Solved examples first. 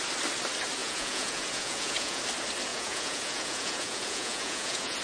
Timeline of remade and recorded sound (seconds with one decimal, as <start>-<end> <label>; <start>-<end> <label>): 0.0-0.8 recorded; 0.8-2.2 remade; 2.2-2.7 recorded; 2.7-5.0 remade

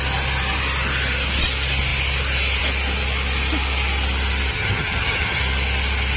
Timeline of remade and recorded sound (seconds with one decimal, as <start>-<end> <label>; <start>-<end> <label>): 0.0-4.5 recorded; 4.5-5.4 remade; 5.4-6.2 recorded

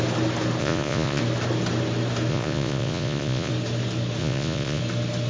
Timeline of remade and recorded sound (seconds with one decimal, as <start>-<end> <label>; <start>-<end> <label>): 0.0-0.6 recorded; 0.6-1.2 remade; 1.2-2.3 recorded; 2.3-3.5 remade; 3.5-4.2 recorded; 4.2-4.8 remade; 4.8-5.3 recorded

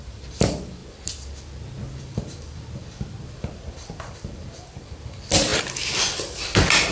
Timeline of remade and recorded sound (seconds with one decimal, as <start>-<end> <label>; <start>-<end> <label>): 0.0-0.8 remade; 0.8-2.0 recorded; 2.0-6.9 remade